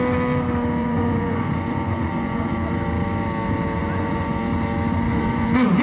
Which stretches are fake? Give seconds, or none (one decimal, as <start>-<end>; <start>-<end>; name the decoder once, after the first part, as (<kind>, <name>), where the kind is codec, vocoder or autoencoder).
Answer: 0.8-2.5 (vocoder, Vocos); 3.8-4.4; 5.1-5.8